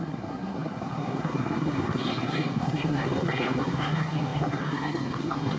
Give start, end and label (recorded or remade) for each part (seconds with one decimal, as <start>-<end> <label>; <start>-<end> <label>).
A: 0.0-5.6 remade